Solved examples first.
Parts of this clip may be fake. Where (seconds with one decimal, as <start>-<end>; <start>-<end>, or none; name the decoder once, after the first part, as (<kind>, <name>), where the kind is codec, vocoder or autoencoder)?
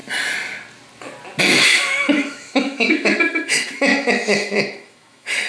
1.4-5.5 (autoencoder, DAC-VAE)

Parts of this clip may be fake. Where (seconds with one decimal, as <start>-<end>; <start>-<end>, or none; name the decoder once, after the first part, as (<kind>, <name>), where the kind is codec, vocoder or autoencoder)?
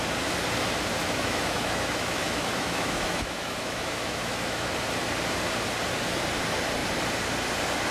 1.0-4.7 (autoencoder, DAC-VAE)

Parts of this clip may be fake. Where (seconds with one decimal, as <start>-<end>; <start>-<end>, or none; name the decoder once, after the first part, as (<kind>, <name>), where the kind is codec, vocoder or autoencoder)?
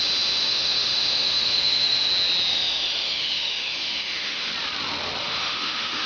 0.4-2.1 (autoencoder, DAC-VAE); 2.5-4.5; 5.2-6.1